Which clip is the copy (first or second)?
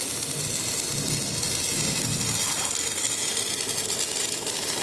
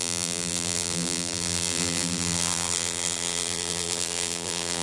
second